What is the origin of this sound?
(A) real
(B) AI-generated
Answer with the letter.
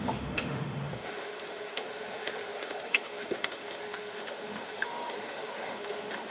B